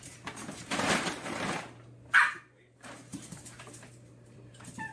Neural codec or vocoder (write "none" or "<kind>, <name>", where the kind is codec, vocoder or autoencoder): vocoder, BigVGAN v2